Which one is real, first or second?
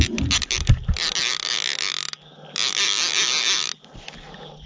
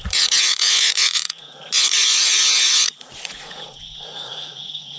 first